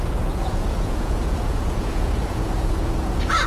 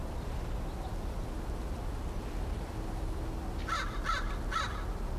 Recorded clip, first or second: second